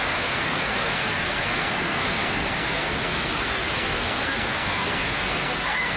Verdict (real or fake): fake